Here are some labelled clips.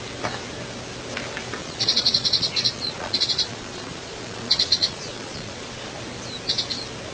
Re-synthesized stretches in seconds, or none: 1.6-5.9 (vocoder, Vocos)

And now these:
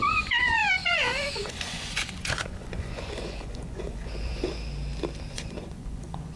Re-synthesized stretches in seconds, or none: 0.0-4.5 (vocoder, Vocos); 5.3-6.4

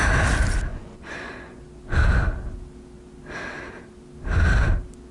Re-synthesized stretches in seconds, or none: 0.7-1.6 (vocoder, Vocos)

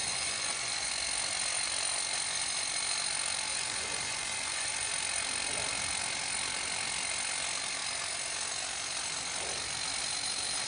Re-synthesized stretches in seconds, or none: 0.0-0.9 (vocoder, Vocos); 3.5-4.9